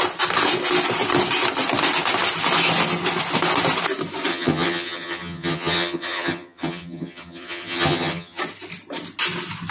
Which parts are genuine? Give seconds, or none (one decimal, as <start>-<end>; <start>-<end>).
0.0-4.3; 8.4-9.7